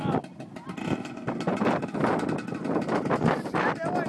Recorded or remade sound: recorded